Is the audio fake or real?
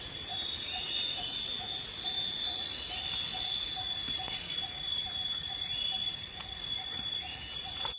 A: fake